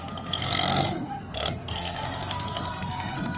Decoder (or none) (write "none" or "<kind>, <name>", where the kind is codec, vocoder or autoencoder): codec, SNAC